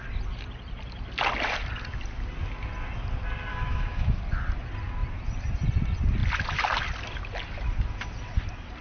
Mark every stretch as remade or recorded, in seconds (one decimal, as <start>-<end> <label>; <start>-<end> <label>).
0.0-3.5 recorded; 3.5-4.2 remade; 4.2-8.8 recorded